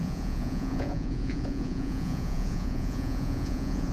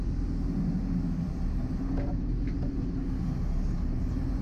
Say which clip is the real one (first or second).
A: second